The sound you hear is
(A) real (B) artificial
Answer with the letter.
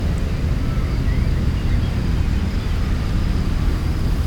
A